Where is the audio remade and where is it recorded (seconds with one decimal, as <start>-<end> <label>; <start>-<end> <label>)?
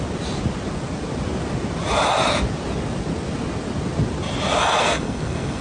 0.0-4.8 recorded; 4.8-5.6 remade